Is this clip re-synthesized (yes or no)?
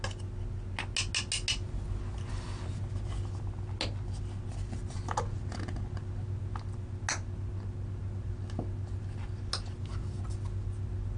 no